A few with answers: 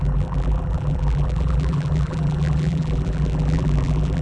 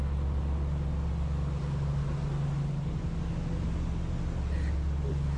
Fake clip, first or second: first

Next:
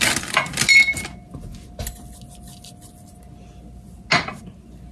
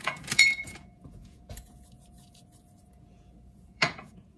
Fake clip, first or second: second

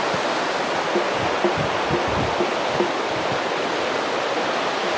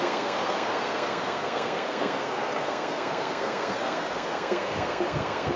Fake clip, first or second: second